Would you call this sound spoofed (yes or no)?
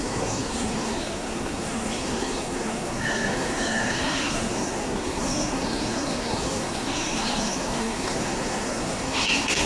yes